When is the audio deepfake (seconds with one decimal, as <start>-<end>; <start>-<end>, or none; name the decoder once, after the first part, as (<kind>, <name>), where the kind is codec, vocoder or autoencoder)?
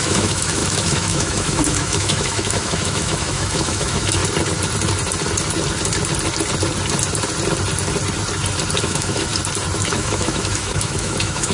0.0-4.2 (autoencoder, DAC-VAE); 8.8-9.3; 9.9-11.5